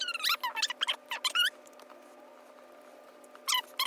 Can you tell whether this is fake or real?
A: real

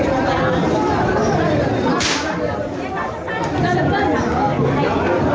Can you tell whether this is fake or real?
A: fake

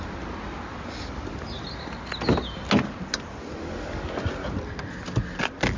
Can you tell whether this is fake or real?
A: real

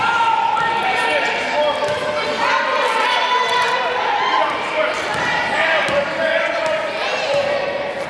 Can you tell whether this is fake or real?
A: fake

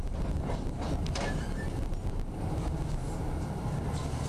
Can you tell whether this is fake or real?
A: real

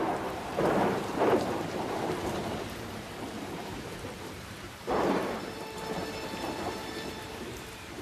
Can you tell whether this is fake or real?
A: fake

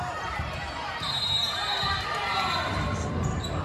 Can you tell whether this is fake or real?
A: fake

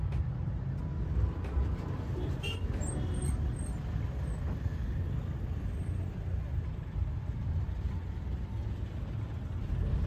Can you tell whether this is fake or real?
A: real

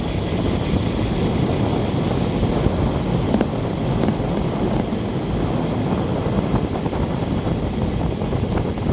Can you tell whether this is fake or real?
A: real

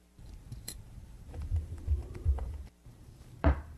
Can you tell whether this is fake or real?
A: fake